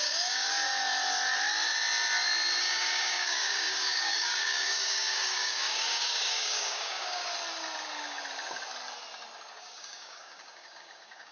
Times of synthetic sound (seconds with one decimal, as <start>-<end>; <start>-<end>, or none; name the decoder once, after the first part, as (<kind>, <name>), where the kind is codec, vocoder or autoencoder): 0.0-0.7 (codec, DAC); 2.6-7.2; 9.6-11.3